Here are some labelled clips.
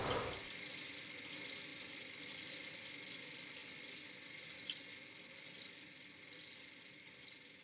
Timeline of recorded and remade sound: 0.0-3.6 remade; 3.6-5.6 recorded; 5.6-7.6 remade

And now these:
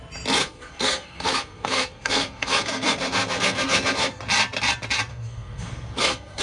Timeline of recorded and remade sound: 0.0-0.4 recorded; 0.4-4.2 remade; 4.2-5.1 recorded; 5.1-6.4 remade

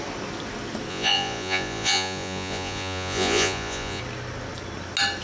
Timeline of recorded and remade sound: 0.0-0.9 recorded; 0.9-4.0 remade; 4.0-5.2 recorded

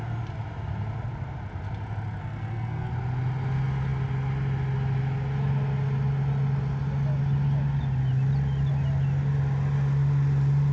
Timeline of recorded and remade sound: 0.0-2.2 recorded; 2.2-2.9 remade; 2.9-10.7 recorded

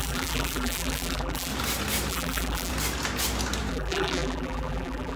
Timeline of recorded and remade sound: 0.0-1.5 remade; 1.5-2.1 recorded; 2.1-2.7 remade; 2.7-3.7 recorded; 3.7-5.2 remade

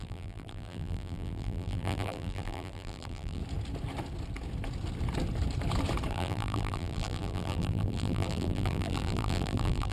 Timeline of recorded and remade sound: 0.0-3.4 remade; 3.4-6.1 recorded; 6.1-9.9 remade